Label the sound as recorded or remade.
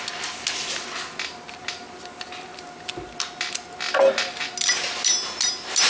recorded